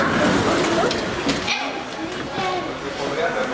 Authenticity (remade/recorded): recorded